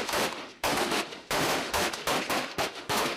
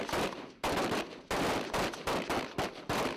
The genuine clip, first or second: second